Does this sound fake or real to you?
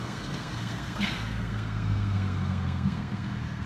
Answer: fake